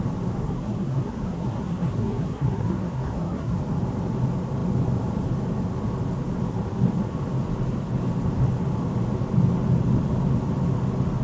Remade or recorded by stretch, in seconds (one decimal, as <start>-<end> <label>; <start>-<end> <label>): 0.0-0.4 recorded; 0.4-3.6 remade; 3.6-11.2 recorded